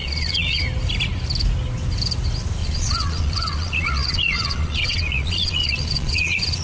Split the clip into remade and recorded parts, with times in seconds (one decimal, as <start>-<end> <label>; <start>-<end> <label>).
0.0-0.6 remade; 0.6-2.6 recorded; 2.6-6.6 remade